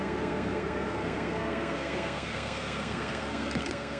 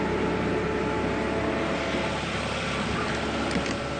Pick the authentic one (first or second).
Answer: second